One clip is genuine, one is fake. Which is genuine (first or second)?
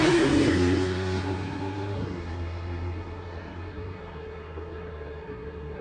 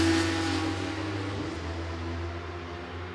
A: second